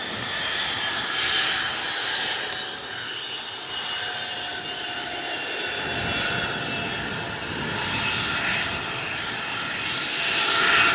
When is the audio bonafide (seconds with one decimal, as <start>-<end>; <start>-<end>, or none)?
0.0-10.9